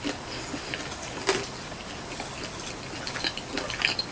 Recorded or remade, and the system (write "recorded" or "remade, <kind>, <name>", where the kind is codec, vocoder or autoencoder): recorded